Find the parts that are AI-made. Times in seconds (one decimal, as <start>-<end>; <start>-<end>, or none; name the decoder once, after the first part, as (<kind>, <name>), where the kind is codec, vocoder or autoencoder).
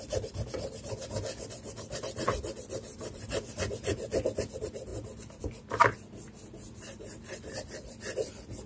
none